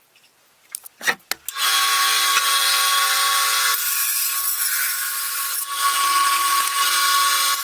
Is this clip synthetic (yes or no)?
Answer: no